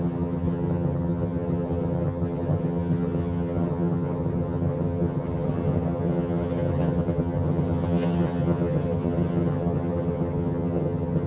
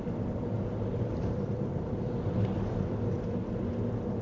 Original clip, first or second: second